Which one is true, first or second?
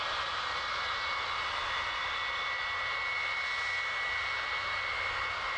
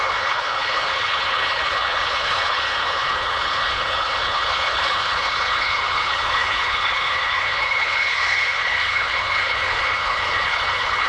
first